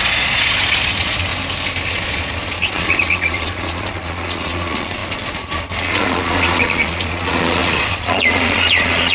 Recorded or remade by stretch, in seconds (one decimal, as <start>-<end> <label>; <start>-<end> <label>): 0.0-1.3 remade; 1.3-1.9 recorded; 1.9-9.1 remade